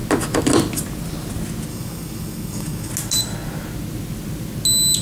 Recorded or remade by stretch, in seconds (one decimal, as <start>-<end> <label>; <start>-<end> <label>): 0.0-1.7 recorded; 1.7-2.9 remade; 2.9-5.0 recorded